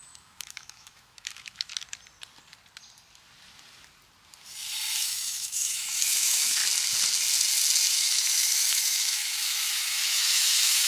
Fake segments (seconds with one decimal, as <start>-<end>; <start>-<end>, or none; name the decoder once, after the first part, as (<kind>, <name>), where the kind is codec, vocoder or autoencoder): 0.0-1.7 (autoencoder, DAC-VAE); 5.0-6.6; 7.9-10.9